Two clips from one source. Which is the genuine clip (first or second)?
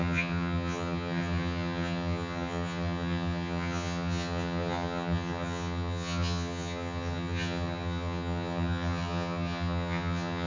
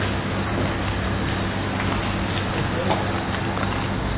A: second